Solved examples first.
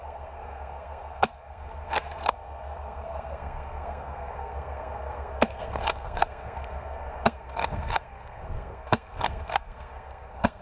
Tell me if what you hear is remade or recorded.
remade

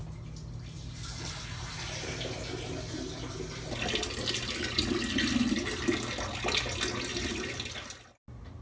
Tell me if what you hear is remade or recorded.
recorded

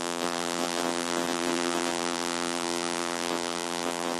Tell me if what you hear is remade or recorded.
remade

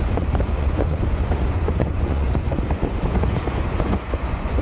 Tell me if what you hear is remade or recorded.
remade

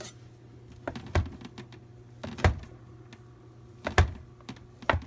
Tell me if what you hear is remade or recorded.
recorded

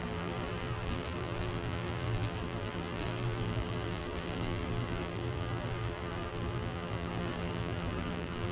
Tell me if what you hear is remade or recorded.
remade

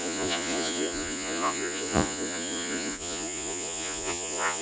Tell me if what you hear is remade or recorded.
remade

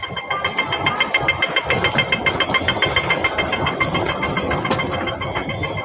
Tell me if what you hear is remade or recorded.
recorded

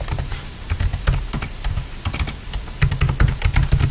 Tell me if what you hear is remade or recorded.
recorded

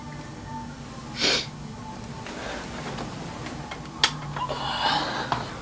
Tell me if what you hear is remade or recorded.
recorded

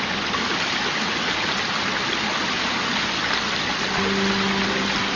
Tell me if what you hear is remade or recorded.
recorded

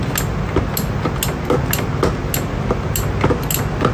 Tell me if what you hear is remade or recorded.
recorded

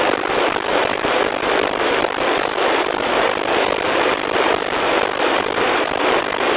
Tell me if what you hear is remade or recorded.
remade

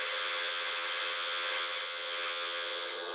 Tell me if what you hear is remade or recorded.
remade